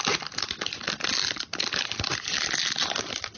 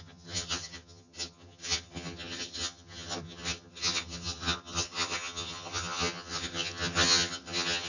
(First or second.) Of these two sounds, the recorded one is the first